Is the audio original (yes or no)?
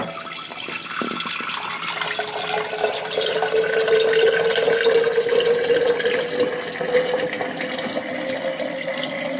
yes